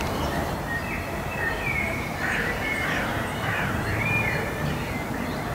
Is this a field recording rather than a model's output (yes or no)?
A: no